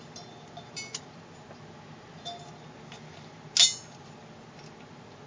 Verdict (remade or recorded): recorded